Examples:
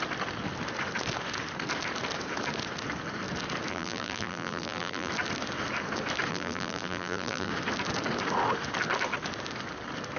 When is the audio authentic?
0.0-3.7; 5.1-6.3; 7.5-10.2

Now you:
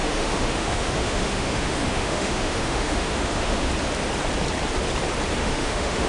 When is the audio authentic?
3.7-5.4

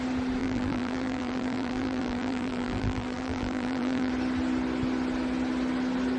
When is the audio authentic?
0.0-0.4; 4.1-6.2